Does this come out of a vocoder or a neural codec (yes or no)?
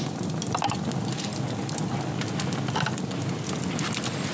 no